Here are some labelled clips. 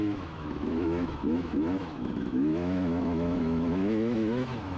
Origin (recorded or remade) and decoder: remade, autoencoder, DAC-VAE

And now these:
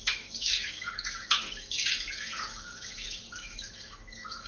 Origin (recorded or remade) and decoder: remade, autoencoder, DAC-VAE